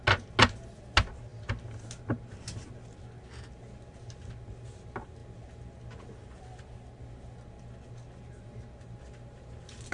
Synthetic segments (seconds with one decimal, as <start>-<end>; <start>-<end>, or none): none